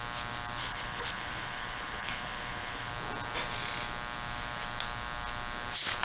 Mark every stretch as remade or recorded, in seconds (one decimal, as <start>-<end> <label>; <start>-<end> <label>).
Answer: 0.0-0.6 recorded; 0.6-2.9 remade; 2.9-6.0 recorded